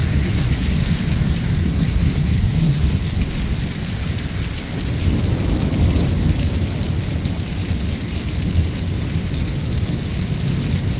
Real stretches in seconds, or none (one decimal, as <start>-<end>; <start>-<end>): 0.8-1.6; 2.9-11.0